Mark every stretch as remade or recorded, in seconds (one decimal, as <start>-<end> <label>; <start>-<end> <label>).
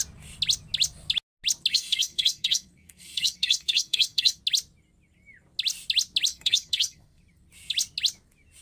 0.0-1.7 recorded; 1.7-4.4 remade; 4.4-6.3 recorded; 6.3-7.2 remade; 7.2-8.6 recorded